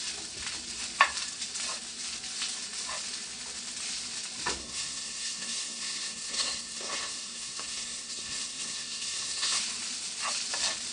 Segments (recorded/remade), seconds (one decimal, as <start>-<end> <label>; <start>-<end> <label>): 0.0-4.6 recorded; 4.6-9.6 remade; 9.6-10.9 recorded